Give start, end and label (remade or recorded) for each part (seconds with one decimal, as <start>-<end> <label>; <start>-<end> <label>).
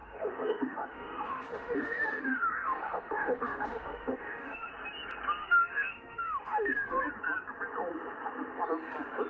0.0-4.7 remade; 4.7-5.4 recorded; 5.4-7.1 remade; 7.1-9.3 recorded